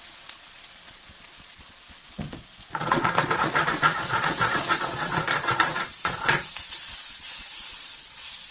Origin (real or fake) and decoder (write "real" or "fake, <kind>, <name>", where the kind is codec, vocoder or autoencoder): fake, vocoder, Vocos